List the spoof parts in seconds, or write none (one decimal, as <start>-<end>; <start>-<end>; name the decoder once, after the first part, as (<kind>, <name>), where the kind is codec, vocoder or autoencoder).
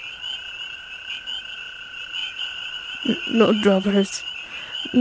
2.2-5.0 (vocoder, Vocos)